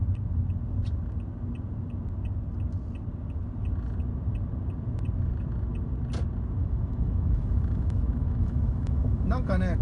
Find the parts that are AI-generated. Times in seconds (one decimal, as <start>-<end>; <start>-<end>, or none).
6.6-9.8